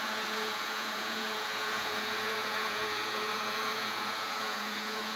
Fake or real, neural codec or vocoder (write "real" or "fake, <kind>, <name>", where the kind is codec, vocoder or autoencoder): fake, vocoder, Vocos